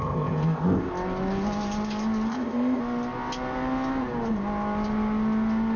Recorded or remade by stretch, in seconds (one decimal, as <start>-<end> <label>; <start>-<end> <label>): 0.0-0.9 remade; 0.9-2.3 recorded; 2.3-2.8 remade; 2.8-5.8 recorded